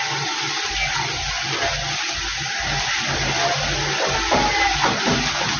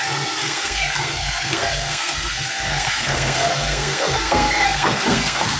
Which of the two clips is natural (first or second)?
first